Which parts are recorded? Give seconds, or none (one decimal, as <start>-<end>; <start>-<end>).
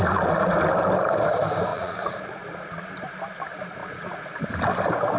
0.0-1.7; 2.8-3.8; 4.5-5.2